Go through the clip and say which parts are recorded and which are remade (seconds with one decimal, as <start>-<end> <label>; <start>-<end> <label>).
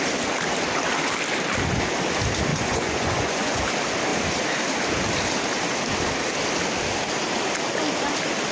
0.0-2.5 recorded; 2.5-3.6 remade; 3.6-8.5 recorded